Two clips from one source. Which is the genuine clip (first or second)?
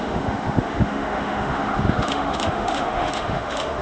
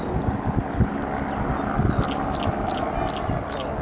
second